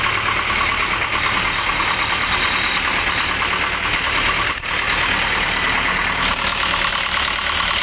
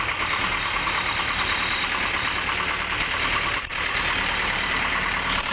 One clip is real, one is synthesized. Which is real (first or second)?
first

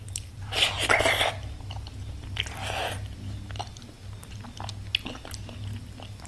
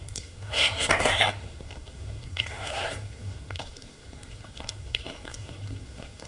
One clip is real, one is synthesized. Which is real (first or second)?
first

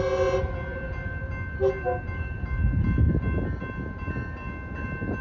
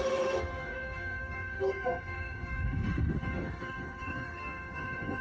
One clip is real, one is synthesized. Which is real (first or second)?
first